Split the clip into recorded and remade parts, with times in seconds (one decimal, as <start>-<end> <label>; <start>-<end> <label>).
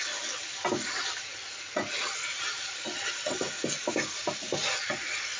0.0-5.4 recorded